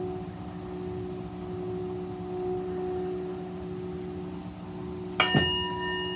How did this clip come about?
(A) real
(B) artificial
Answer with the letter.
A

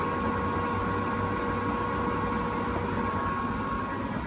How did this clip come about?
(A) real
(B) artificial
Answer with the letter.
A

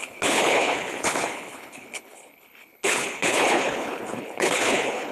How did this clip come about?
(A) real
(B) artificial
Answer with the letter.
B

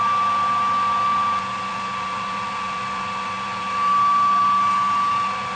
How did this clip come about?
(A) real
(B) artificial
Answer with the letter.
A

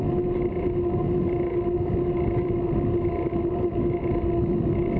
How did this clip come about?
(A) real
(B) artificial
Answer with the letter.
A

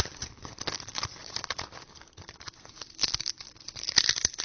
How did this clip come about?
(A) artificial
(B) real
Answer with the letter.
A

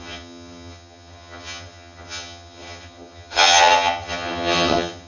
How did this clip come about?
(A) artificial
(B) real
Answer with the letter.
A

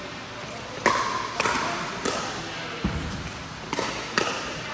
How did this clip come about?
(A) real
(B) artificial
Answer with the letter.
A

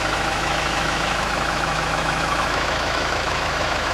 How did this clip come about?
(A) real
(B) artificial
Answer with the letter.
B